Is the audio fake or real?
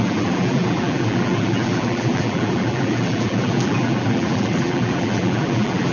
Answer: fake